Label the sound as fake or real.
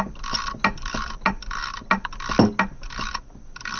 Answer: real